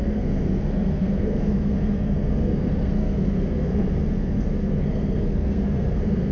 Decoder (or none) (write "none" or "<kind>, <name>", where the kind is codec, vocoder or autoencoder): codec, SNAC